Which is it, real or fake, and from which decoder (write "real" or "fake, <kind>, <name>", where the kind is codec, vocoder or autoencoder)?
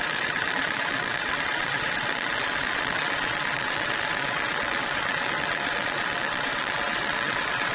fake, vocoder, Vocos